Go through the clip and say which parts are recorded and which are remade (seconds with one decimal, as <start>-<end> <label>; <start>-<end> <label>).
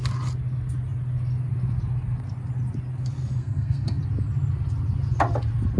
0.0-3.4 recorded; 3.4-4.0 remade; 4.0-5.8 recorded